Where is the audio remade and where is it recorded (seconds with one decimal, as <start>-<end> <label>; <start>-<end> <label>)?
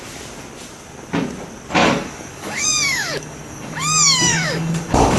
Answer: 0.0-1.8 recorded; 1.8-5.2 remade